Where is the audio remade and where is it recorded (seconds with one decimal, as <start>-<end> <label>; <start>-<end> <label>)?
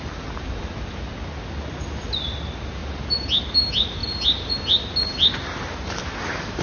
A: 0.0-6.6 recorded